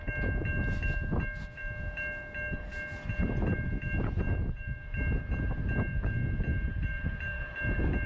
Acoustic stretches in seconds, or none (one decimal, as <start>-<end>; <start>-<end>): 0.0-6.5; 7.4-8.1